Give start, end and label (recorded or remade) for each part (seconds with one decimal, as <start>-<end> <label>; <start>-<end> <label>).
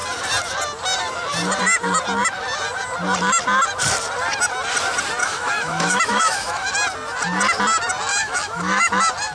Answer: 0.0-5.2 recorded; 5.2-6.7 remade; 6.7-8.1 recorded; 8.1-8.9 remade; 8.9-9.3 recorded